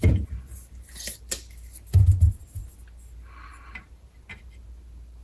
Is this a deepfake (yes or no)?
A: no